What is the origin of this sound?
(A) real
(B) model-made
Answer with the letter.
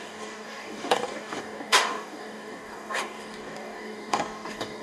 B